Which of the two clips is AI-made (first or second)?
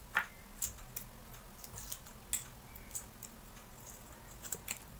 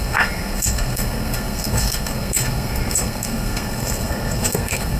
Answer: second